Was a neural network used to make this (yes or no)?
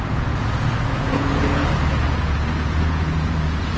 yes